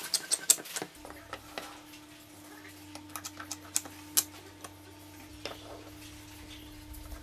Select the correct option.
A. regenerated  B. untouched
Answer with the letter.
B